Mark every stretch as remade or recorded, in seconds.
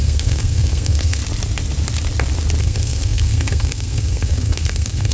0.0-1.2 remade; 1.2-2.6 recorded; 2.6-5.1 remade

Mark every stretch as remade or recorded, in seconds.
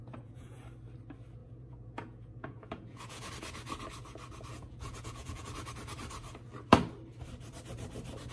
0.0-0.6 remade; 0.6-1.4 recorded; 1.4-3.3 remade; 3.3-4.5 recorded; 4.5-5.5 remade; 5.5-8.3 recorded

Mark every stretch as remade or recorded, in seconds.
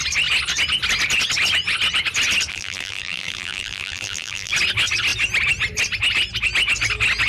0.0-2.5 recorded; 2.5-4.5 remade; 4.5-7.3 recorded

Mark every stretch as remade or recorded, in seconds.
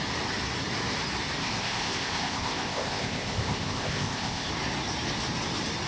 0.0-1.4 recorded; 1.4-4.5 remade; 4.5-5.9 recorded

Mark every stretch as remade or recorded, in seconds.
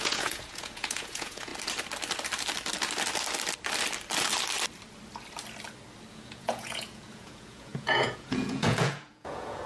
0.0-1.5 remade; 1.5-6.1 recorded; 6.1-9.7 remade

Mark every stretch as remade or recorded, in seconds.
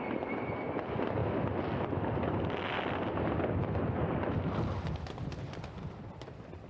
0.0-6.7 recorded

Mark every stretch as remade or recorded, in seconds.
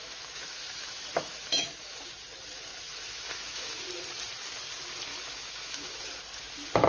0.0-2.1 remade; 2.1-2.7 recorded; 2.7-3.8 remade; 3.8-5.1 recorded; 5.1-5.9 remade; 5.9-6.9 recorded